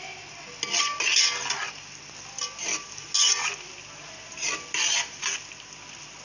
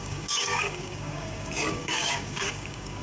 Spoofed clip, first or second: second